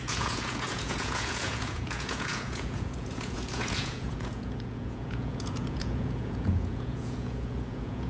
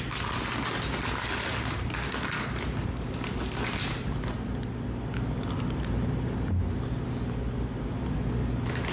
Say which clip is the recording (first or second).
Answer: second